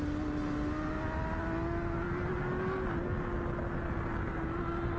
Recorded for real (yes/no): yes